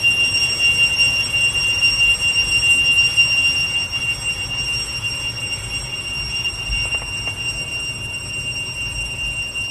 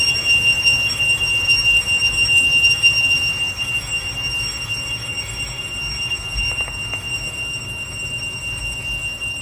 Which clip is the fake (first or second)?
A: second